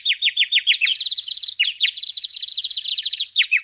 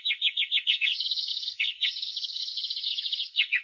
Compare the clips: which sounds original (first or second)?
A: first